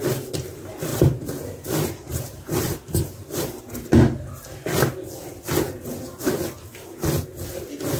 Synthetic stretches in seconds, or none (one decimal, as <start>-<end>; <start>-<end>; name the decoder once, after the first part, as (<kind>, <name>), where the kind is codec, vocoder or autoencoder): 0.9-3.6 (vocoder, BigVGAN v2)